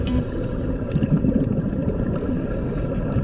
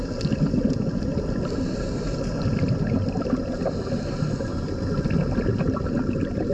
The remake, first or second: first